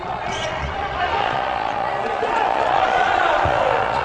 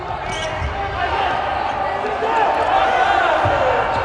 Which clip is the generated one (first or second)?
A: first